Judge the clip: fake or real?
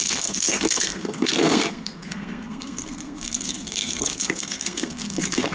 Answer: fake